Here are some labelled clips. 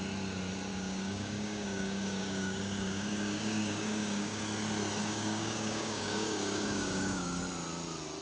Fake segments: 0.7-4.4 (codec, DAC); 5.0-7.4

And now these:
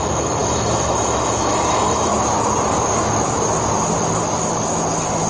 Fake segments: 0.0-2.1 (autoencoder, DAC-VAE)

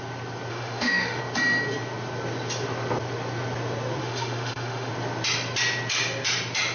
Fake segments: 0.5-1.2 (autoencoder, DAC-VAE); 4.0-4.9

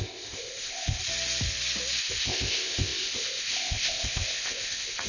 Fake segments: 0.0-1.0 (codec, ZipCodec); 2.0-5.1